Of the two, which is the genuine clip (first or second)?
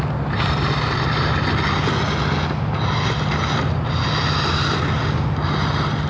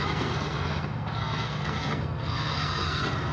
first